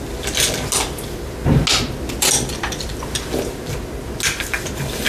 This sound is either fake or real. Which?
real